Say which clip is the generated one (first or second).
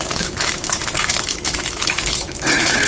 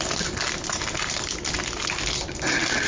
first